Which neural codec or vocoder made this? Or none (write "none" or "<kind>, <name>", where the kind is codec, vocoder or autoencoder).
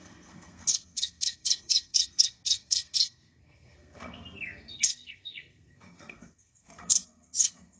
codec, SNAC